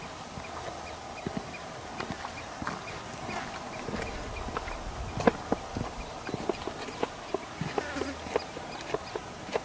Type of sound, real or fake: real